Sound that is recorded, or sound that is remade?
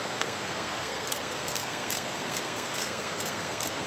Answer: remade